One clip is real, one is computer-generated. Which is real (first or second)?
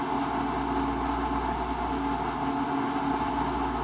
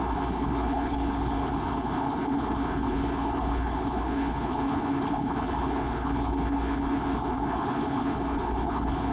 first